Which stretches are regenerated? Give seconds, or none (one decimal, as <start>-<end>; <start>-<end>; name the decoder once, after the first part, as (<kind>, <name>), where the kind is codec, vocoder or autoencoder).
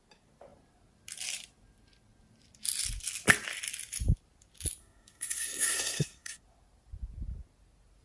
4.8-6.4 (codec, SNAC)